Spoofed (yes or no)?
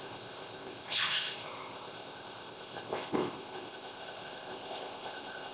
yes